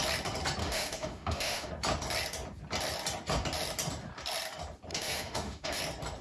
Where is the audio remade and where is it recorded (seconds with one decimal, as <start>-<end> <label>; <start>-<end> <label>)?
0.0-0.6 recorded; 0.6-1.7 remade; 1.7-4.9 recorded; 4.9-5.8 remade; 5.8-6.2 recorded

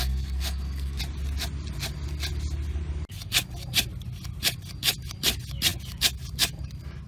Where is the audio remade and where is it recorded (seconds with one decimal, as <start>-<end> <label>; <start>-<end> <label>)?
0.0-1.0 remade; 1.0-7.1 recorded